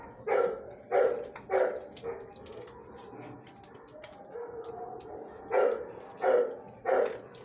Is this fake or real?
real